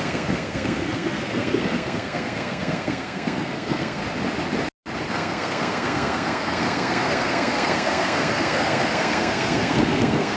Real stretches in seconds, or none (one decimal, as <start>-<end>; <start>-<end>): 4.0-5.1